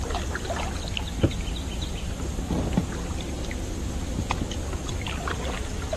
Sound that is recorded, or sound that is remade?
recorded